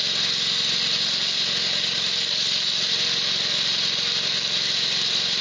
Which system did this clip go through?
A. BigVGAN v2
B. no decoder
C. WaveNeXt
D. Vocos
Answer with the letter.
B